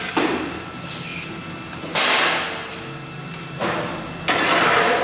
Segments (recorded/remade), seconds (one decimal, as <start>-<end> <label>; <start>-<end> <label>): 0.0-1.1 remade; 1.1-2.0 recorded; 2.0-2.7 remade; 2.7-4.6 recorded; 4.6-5.0 remade